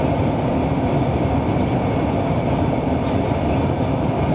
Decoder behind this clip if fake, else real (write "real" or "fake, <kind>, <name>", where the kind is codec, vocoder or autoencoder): real